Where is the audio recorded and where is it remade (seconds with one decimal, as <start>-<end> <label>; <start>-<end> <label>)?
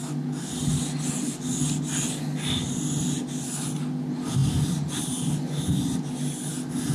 0.0-6.9 recorded